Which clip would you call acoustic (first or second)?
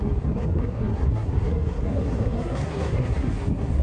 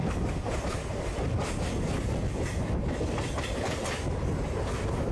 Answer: second